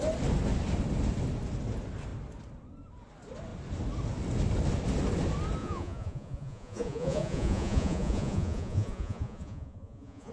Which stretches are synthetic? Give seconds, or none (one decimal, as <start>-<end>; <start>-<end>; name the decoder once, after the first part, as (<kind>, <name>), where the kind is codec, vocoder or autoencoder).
5.6-10.3 (vocoder, Vocos)